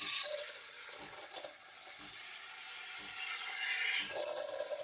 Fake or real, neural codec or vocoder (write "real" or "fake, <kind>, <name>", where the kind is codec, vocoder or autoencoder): real